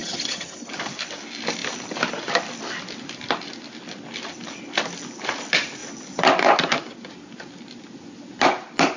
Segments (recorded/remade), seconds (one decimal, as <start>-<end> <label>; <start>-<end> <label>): 0.0-0.7 remade; 0.7-9.0 recorded

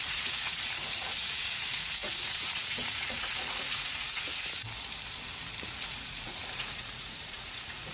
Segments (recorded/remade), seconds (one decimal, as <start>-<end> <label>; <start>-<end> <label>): 0.0-4.3 remade; 4.3-5.6 recorded; 5.6-7.9 remade

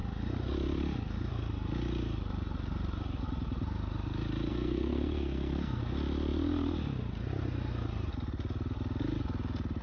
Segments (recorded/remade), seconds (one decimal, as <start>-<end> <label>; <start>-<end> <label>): 0.0-4.5 recorded; 4.5-5.8 remade; 5.8-9.8 recorded

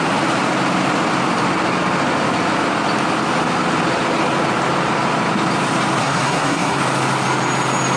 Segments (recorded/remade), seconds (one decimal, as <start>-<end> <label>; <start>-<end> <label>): 0.0-6.0 recorded; 6.0-6.8 remade; 6.8-8.0 recorded